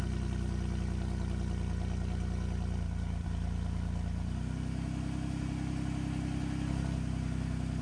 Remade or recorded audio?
recorded